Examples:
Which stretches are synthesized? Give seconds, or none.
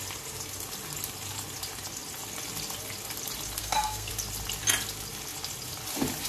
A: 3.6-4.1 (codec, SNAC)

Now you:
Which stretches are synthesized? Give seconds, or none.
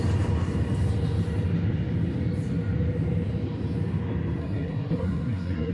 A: 4.4-5.7 (codec, SNAC)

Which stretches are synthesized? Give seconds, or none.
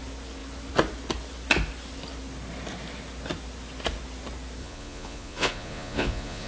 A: 4.6-6.5 (vocoder, Vocos)